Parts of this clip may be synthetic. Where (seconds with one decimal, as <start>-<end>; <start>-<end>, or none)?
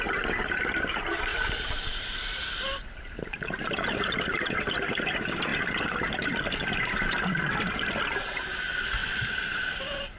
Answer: 1.3-2.4; 5.5-6.4; 9.0-10.2